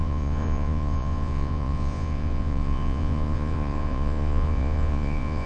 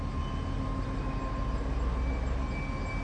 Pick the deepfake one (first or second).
first